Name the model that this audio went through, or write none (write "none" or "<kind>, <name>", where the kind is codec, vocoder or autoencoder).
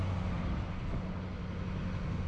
none